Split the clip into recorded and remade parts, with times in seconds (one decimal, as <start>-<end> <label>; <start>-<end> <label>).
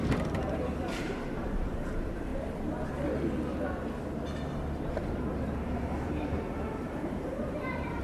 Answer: 0.0-2.3 remade; 2.3-5.0 recorded; 5.0-8.0 remade